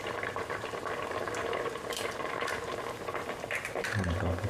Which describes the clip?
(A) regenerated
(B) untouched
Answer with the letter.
A